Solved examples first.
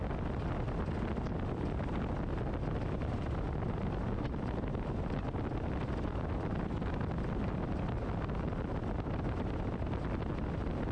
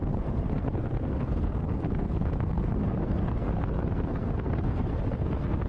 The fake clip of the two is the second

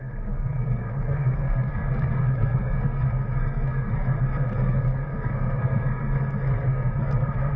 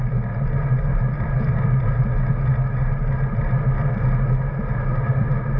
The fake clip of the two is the first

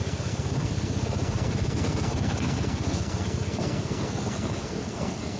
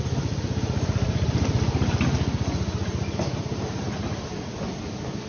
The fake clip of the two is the first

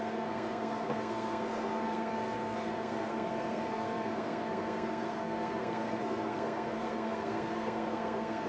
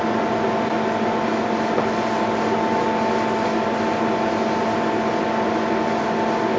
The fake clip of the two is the first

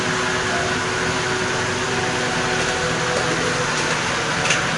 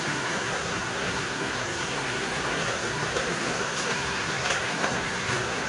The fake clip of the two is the second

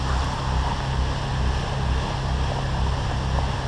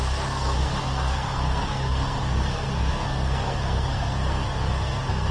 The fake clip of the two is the second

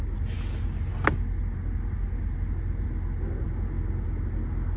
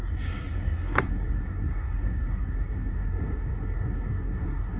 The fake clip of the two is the second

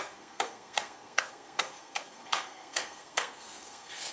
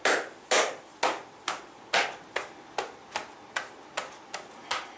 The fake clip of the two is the first